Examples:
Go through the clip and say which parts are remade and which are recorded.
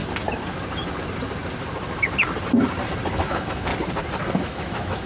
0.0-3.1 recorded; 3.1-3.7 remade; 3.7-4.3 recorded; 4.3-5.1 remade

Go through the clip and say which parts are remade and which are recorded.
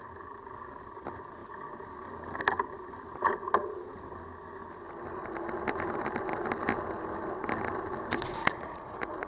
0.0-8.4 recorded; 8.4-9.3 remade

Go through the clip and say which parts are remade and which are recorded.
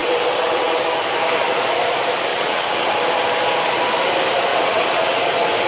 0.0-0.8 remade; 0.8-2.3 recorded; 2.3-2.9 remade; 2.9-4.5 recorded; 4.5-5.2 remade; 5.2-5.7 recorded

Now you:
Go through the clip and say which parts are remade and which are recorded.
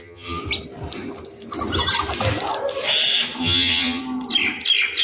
0.0-0.4 remade; 0.4-3.4 recorded; 3.4-4.0 remade; 4.0-5.0 recorded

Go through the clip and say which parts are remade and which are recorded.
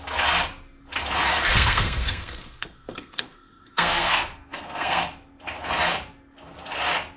0.0-1.3 recorded; 1.3-5.0 remade; 5.0-7.2 recorded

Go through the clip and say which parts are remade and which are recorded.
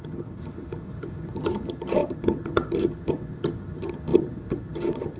0.0-5.2 remade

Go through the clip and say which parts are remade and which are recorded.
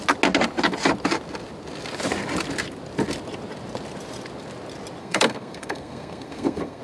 0.0-5.0 recorded; 5.0-6.8 remade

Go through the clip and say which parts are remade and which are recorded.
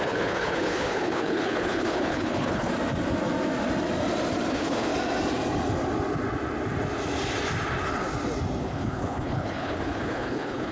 0.0-2.7 remade; 2.7-4.5 recorded; 4.5-4.9 remade; 4.9-8.6 recorded; 8.6-10.7 remade